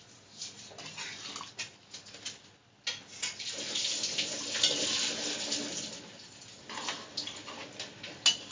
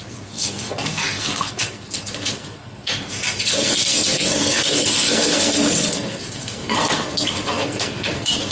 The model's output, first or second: second